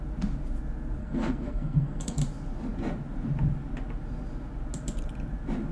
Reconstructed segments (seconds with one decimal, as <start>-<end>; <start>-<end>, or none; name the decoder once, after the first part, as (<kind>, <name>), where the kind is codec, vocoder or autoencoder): 1.0-2.2 (codec, SNAC)